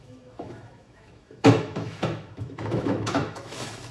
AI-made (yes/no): yes